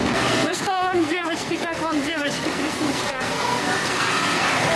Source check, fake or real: fake